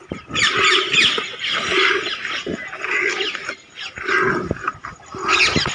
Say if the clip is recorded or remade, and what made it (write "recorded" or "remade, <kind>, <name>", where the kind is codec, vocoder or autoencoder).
recorded